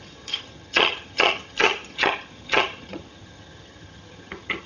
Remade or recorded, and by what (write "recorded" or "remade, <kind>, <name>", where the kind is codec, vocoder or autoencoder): remade, vocoder, HiFi-GAN